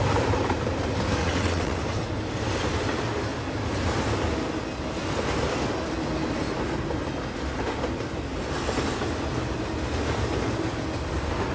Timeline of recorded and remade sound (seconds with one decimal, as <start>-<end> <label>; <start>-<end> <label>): 0.0-1.2 recorded; 1.2-1.8 remade; 1.8-11.5 recorded